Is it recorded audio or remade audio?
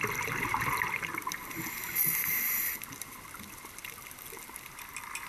recorded